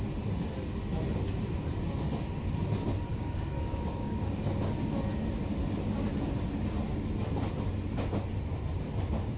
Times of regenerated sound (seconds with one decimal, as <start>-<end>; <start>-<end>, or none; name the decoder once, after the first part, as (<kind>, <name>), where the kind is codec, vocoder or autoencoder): 3.1-4.2 (codec, DAC)